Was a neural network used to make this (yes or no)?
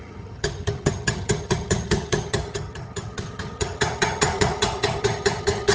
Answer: yes